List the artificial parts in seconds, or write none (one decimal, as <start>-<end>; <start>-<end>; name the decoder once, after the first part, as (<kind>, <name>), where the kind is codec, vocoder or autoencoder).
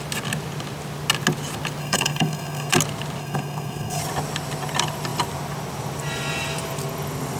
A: 1.8-2.7 (codec, SNAC); 3.2-4.0